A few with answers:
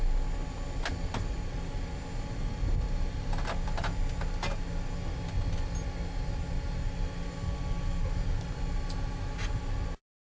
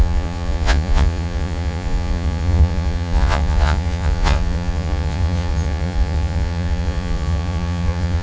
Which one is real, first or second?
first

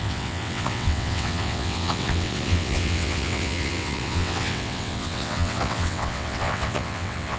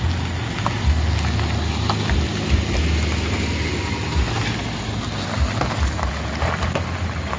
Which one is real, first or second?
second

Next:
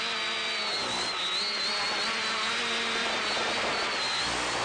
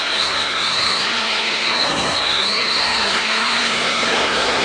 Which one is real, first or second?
first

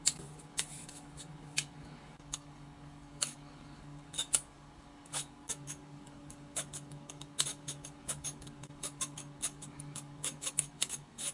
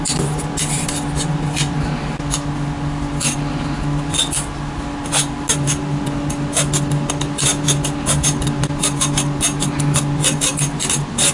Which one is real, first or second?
second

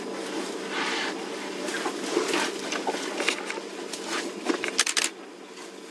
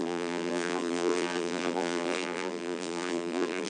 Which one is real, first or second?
first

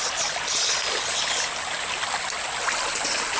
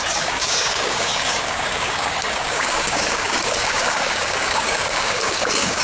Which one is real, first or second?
first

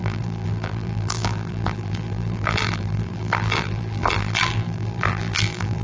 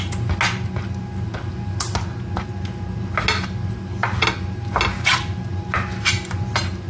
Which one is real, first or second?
second